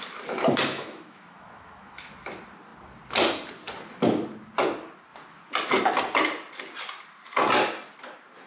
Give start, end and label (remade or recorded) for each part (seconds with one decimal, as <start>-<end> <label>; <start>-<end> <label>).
0.0-0.7 recorded; 0.7-2.1 remade; 2.1-8.5 recorded